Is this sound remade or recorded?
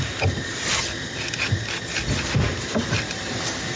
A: recorded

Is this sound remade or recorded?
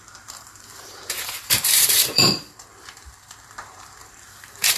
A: remade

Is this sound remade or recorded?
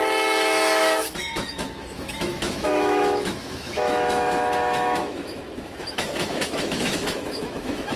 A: remade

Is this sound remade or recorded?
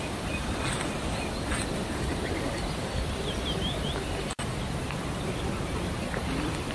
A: recorded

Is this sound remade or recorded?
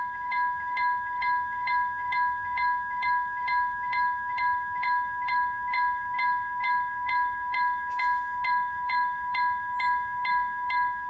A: remade